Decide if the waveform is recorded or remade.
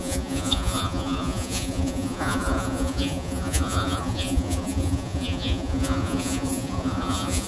remade